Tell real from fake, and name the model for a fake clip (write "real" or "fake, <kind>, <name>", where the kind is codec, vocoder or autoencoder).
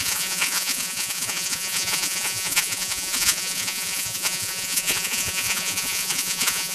fake, vocoder, Vocos